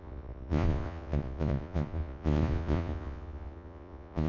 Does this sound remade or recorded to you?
remade